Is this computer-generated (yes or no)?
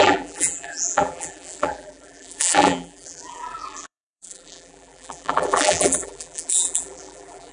yes